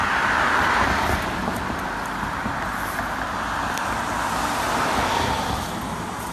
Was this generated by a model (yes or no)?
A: no